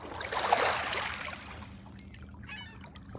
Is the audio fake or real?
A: real